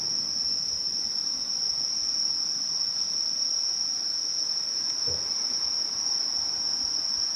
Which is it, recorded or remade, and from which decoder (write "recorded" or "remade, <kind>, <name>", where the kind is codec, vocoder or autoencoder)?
recorded